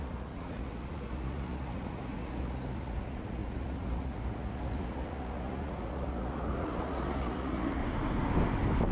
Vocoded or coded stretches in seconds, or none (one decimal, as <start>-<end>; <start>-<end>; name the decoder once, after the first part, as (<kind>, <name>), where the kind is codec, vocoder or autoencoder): 0.0-7.8 (vocoder, Vocos)